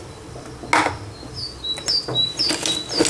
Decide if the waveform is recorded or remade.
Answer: recorded